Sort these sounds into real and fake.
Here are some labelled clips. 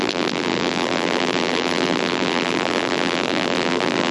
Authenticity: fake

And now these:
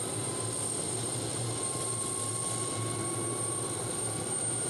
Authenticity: real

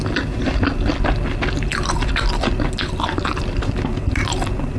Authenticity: real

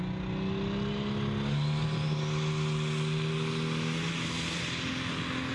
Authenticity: real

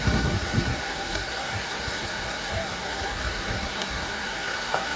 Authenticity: fake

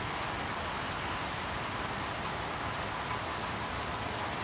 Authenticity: real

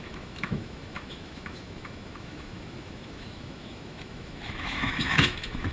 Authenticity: fake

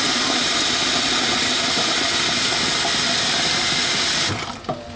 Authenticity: real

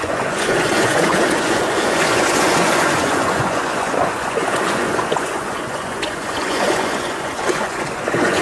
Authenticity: fake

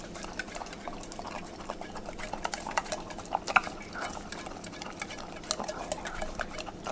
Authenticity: real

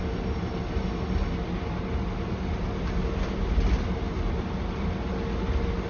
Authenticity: real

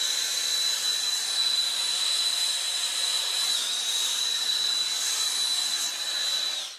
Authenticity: real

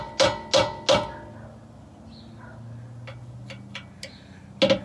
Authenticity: real